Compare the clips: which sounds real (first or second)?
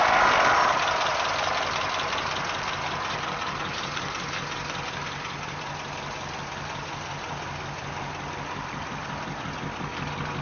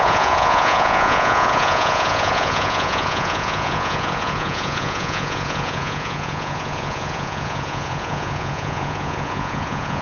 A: first